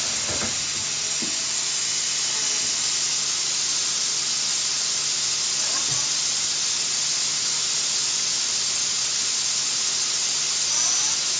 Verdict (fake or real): real